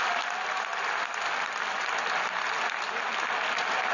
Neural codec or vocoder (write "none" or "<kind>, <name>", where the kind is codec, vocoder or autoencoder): none